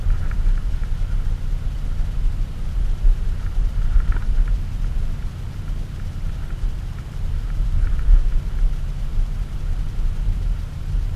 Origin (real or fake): fake